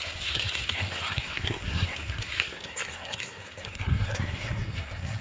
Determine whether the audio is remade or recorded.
remade